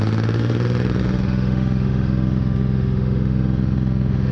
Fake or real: fake